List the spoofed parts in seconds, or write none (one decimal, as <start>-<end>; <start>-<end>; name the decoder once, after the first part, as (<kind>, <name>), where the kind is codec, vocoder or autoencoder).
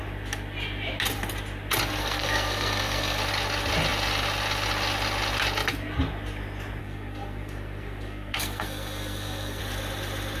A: 2.0-3.2 (codec, SNAC); 6.8-9.6